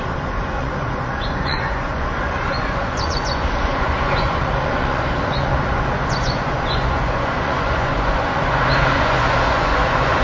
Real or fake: fake